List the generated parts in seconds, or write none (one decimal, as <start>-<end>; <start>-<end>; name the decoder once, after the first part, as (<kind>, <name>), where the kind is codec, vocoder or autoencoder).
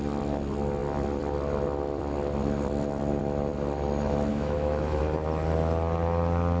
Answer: 4.3-5.0 (autoencoder, DAC-VAE)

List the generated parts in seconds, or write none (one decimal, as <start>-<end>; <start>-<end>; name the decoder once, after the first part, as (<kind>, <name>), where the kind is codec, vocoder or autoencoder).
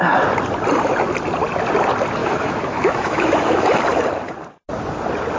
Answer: 2.2-3.8 (autoencoder, DAC-VAE)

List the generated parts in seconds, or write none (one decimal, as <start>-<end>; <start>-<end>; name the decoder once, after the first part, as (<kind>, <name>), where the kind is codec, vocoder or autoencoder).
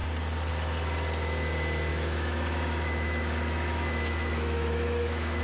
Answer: 1.9-5.4 (autoencoder, DAC-VAE)